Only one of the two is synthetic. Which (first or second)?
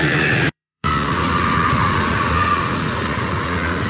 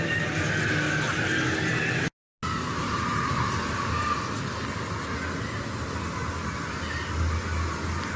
first